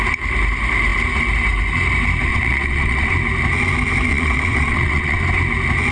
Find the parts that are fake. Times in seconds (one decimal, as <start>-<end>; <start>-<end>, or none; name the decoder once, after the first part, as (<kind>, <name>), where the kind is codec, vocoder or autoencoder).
2.3-3.1 (vocoder, WaveNeXt); 4.1-5.2